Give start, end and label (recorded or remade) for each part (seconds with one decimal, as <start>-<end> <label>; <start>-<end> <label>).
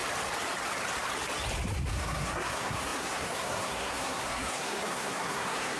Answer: 0.0-1.9 recorded; 1.9-5.8 remade